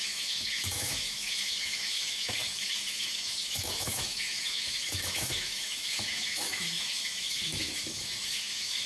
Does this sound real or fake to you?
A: fake